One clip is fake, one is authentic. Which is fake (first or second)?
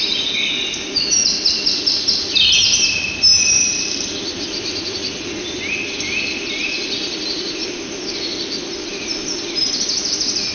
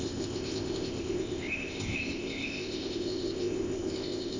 second